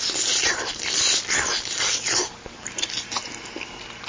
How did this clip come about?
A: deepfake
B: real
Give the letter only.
B